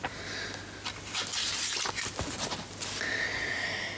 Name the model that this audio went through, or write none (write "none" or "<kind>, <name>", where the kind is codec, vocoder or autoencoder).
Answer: none